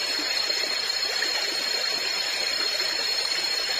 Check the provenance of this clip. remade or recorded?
remade